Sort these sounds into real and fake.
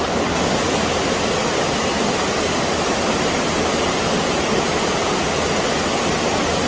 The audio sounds real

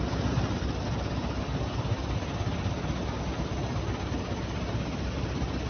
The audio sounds real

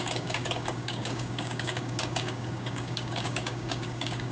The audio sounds fake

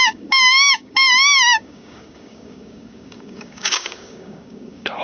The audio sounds fake